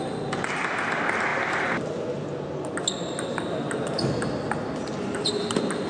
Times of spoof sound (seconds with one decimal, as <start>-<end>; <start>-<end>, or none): none